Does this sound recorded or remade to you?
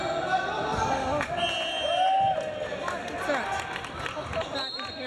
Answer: recorded